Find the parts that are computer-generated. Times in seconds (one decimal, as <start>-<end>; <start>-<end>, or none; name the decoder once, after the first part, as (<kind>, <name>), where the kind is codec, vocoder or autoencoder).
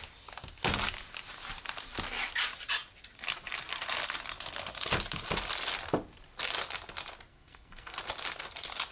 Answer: 7.3-8.0 (codec, SNAC)